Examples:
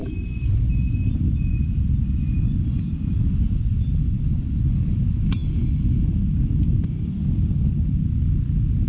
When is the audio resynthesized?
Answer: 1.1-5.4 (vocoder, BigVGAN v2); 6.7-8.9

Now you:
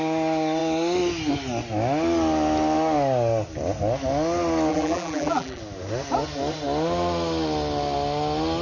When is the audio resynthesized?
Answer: 4.7-5.6 (vocoder, BigVGAN v2)